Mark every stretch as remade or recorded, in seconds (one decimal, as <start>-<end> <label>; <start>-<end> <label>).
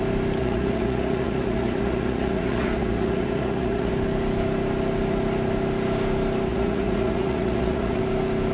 0.0-0.4 recorded; 0.4-3.9 remade; 3.9-6.5 recorded; 6.5-8.0 remade; 8.0-8.5 recorded